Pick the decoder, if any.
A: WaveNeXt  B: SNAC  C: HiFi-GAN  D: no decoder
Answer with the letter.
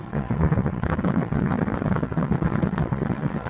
A